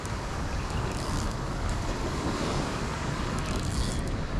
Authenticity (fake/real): fake